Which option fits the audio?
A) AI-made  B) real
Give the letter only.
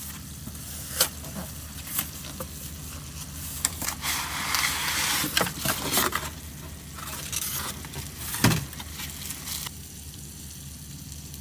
B